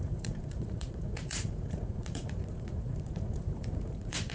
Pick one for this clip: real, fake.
fake